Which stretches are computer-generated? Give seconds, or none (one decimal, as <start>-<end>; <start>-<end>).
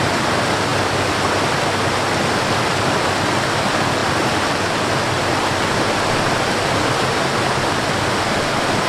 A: none